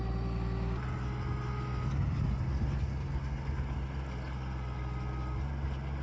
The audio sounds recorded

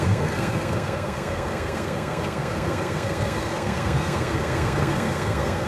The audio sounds remade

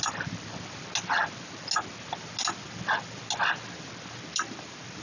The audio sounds recorded